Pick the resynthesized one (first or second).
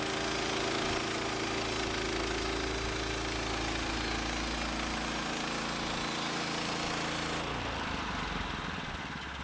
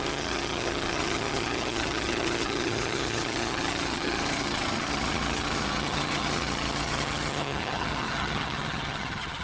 second